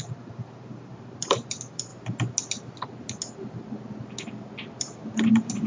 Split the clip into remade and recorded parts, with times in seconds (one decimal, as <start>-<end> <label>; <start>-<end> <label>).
0.0-1.9 remade; 1.9-5.3 recorded; 5.3-5.7 remade